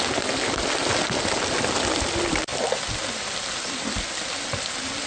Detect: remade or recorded recorded